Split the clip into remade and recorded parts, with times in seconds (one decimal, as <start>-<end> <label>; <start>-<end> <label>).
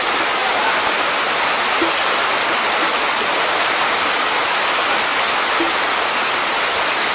0.0-7.1 recorded